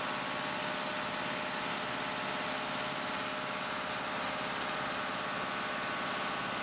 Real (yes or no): yes